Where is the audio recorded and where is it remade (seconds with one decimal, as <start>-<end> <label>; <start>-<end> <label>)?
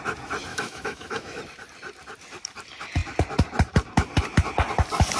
0.0-0.5 recorded; 0.5-1.4 remade; 1.4-5.2 recorded